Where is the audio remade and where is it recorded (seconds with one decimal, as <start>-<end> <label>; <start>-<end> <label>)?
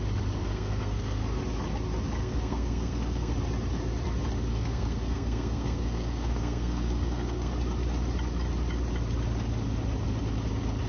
0.0-0.4 recorded; 0.4-1.4 remade; 1.4-2.2 recorded; 2.2-3.3 remade; 3.3-4.5 recorded; 4.5-7.5 remade; 7.5-10.9 recorded